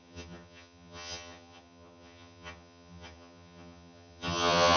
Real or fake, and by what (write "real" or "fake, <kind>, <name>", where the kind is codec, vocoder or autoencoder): fake, vocoder, HiFi-GAN